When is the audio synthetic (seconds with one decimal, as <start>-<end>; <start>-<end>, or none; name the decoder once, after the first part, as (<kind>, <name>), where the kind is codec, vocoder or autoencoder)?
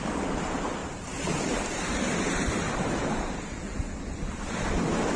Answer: 0.8-3.9 (vocoder, BigVGAN v2)